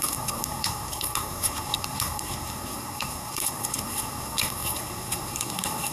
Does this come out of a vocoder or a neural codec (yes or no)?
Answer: yes